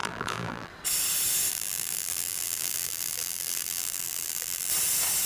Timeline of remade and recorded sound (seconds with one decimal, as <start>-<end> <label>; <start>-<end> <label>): 0.0-0.7 remade; 0.7-1.5 recorded; 1.5-4.7 remade; 4.7-5.3 recorded